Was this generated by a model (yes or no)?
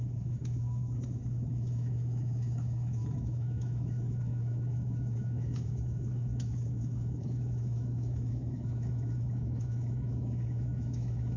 yes